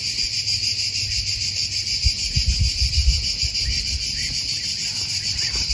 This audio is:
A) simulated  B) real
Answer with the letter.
B